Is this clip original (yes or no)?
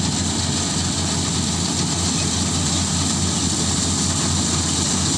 yes